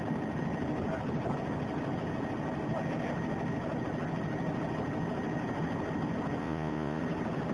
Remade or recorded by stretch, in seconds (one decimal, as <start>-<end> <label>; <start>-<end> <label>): 0.0-6.4 recorded; 6.4-7.0 remade; 7.0-7.5 recorded